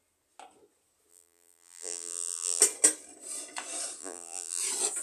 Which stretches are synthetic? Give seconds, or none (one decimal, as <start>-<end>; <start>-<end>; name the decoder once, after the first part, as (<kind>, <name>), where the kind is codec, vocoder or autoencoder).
1.1-2.6 (vocoder, BigVGAN v2); 4.0-4.6